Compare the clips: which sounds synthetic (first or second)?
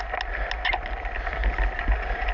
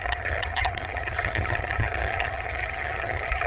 second